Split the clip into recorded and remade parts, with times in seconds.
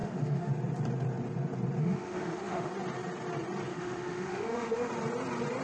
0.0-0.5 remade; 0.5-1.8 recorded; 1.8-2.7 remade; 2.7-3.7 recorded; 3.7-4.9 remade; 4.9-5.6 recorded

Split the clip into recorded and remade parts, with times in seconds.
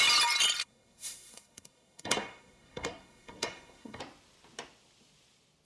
0.0-0.6 recorded; 0.6-4.0 remade; 4.0-5.7 recorded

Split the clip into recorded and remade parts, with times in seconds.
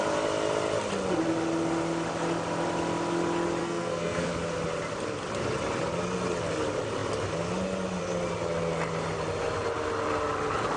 0.0-3.6 recorded; 3.6-4.3 remade; 4.3-10.8 recorded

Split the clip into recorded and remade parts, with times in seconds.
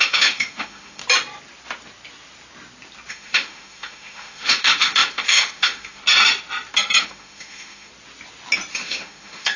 0.0-1.0 remade; 1.0-3.1 recorded; 3.1-6.0 remade; 6.0-7.0 recorded; 7.0-7.9 remade; 7.9-8.7 recorded; 8.7-9.6 remade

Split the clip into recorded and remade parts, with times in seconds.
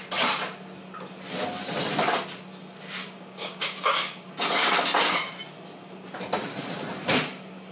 0.0-3.0 recorded; 3.0-4.3 remade; 4.3-7.7 recorded